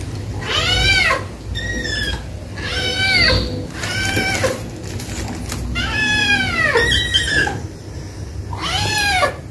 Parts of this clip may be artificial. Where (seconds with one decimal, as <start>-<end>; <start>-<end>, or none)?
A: none